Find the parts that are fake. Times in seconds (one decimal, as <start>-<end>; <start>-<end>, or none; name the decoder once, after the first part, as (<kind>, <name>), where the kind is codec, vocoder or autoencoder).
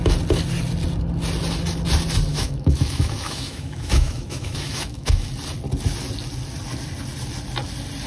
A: 2.3-5.3 (autoencoder, DAC-VAE)